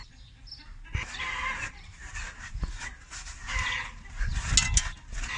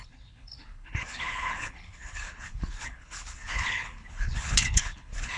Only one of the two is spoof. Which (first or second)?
second